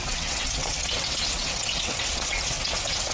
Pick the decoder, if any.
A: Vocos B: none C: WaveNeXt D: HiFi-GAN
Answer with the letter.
C